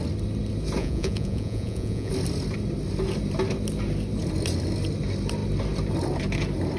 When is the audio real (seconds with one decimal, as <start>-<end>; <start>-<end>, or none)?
0.0-0.8; 2.1-6.8